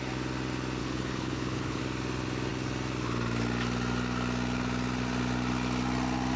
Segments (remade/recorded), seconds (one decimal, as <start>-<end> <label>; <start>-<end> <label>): 0.0-0.8 recorded; 0.8-1.8 remade; 1.8-6.4 recorded